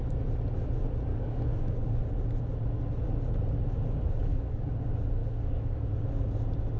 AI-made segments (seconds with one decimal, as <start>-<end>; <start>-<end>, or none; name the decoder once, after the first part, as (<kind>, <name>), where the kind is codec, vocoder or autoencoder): 1.1-2.0 (codec, DAC); 4.2-4.7; 5.2-5.9